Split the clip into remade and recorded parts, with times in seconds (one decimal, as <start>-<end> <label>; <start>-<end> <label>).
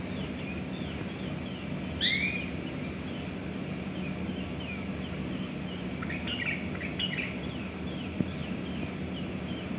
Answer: 0.0-9.8 recorded